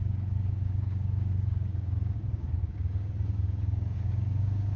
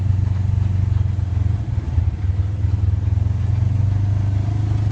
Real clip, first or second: second